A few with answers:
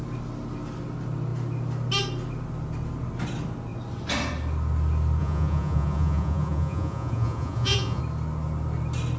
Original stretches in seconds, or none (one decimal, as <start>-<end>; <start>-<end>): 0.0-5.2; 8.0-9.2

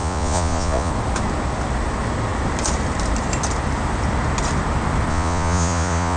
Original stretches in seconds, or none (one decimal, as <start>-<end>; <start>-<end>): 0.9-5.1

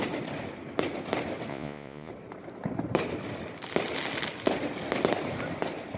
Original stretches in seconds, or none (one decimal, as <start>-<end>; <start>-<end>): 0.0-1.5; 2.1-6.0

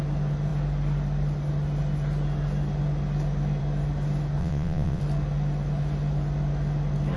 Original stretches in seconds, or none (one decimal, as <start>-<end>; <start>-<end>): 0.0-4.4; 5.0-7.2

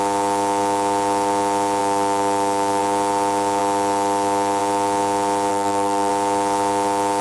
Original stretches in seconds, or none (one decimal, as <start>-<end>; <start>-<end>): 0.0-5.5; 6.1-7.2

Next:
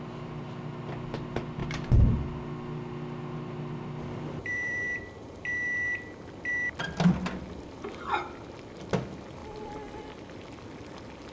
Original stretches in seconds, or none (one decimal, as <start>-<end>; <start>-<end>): 0.0-1.6; 2.2-4.4; 5.0-11.3